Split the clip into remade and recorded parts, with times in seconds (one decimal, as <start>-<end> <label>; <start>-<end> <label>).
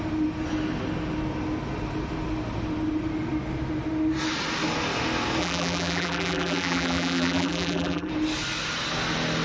0.0-5.4 recorded; 5.4-8.1 remade; 8.1-9.4 recorded